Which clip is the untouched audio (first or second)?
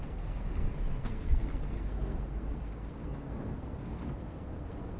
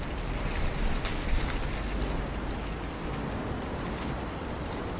second